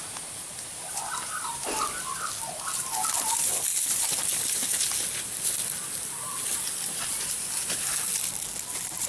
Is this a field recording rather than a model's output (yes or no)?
yes